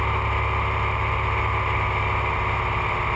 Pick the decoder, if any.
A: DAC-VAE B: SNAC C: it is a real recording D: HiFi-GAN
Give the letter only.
C